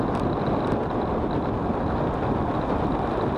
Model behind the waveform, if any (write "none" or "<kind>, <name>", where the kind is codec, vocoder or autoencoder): none